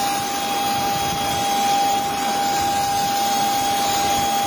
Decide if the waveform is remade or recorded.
recorded